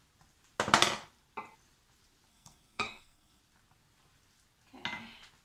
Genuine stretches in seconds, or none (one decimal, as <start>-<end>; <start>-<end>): 0.0-2.3; 3.4-5.4